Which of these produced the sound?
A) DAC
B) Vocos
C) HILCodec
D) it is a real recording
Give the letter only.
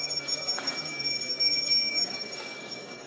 A